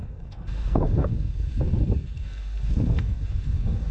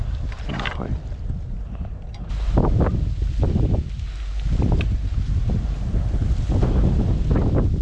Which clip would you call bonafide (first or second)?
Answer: second